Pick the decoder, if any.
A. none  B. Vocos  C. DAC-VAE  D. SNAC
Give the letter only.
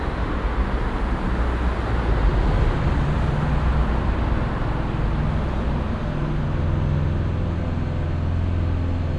A